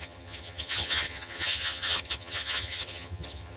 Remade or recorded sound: remade